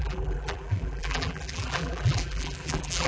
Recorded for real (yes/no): no